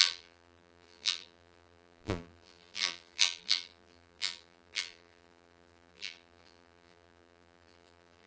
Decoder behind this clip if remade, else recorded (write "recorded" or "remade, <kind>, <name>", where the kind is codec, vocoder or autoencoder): remade, vocoder, BigVGAN v2